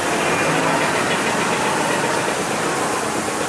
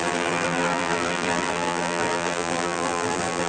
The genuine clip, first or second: first